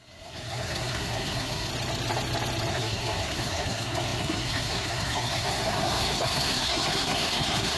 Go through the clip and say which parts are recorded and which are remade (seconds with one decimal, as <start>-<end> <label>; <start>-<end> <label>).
0.0-1.7 remade; 1.7-2.7 recorded; 2.7-7.8 remade